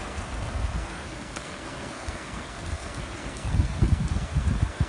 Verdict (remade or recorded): remade